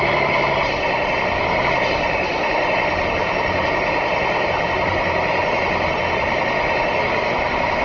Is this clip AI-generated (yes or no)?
no